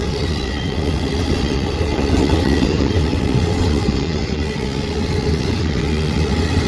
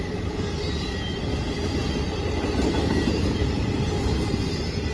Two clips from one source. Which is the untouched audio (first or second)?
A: second